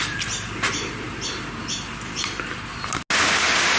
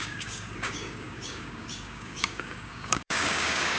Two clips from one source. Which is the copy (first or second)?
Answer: second